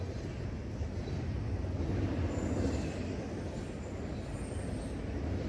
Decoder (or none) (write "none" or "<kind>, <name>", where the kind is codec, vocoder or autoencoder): none